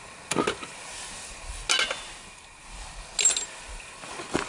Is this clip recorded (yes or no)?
yes